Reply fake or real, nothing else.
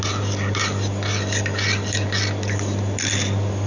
real